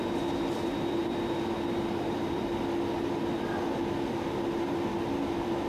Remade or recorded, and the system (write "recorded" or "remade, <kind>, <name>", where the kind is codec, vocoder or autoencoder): recorded